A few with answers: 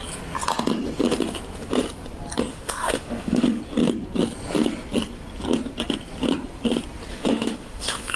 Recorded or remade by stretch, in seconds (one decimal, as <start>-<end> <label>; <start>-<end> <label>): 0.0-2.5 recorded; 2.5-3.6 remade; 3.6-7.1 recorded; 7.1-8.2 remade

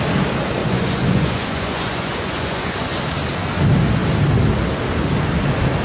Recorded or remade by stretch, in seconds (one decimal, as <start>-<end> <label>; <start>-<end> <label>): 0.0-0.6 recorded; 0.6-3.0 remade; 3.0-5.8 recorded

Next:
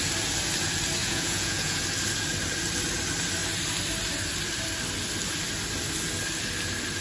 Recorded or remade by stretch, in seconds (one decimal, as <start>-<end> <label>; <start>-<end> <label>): 0.0-1.0 recorded; 1.0-1.8 remade; 1.8-7.0 recorded

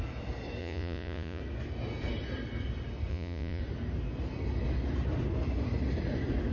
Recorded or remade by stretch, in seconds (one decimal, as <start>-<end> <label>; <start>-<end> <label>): 0.0-0.6 recorded; 0.6-1.4 remade; 1.4-3.1 recorded; 3.1-3.6 remade; 3.6-6.5 recorded

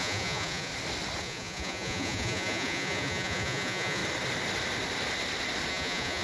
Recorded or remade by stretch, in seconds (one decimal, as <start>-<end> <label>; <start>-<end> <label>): 0.0-0.7 remade; 0.7-1.2 recorded; 1.2-4.0 remade; 4.0-5.7 recorded; 5.7-6.2 remade

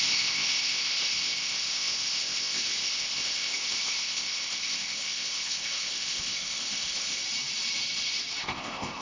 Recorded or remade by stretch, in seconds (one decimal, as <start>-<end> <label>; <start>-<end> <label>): 0.0-7.2 remade; 7.2-8.4 recorded; 8.4-9.0 remade